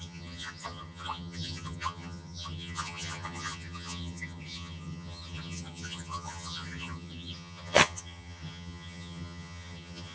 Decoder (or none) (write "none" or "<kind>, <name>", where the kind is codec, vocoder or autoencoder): vocoder, HiFi-GAN